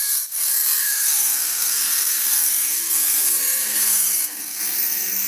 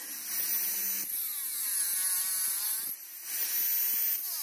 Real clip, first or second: second